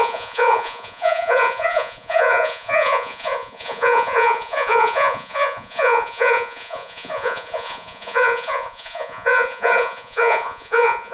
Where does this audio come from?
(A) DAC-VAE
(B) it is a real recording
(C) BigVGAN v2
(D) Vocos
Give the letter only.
D